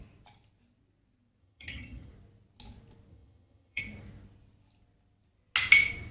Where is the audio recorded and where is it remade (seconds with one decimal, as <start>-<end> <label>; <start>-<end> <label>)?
0.0-1.4 recorded; 1.4-2.1 remade; 2.1-3.1 recorded; 3.1-3.8 remade; 3.8-6.1 recorded